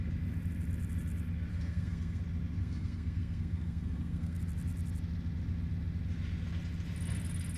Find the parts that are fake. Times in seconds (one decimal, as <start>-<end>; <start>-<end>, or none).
1.5-2.2; 2.6-4.4